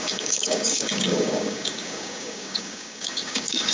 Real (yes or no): no